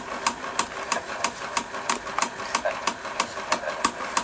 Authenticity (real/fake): real